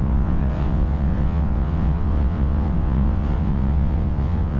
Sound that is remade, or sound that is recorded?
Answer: remade